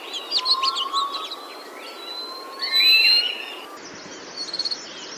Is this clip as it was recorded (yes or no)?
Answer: yes